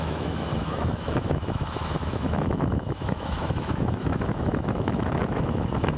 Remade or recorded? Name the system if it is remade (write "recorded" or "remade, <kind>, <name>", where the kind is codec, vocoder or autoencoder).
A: remade, autoencoder, DAC-VAE